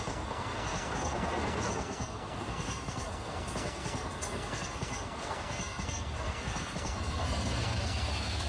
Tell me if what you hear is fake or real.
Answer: fake